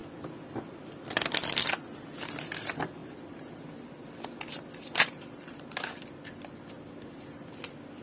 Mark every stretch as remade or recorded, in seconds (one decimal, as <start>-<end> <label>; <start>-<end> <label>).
0.0-8.0 recorded